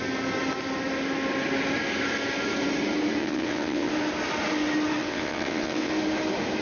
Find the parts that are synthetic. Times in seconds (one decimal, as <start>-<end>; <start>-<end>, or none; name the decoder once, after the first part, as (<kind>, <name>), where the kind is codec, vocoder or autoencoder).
3.2-3.9 (vocoder, WaveNeXt); 5.0-5.9